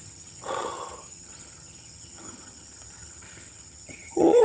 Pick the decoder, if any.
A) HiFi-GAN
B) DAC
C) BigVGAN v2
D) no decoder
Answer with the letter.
A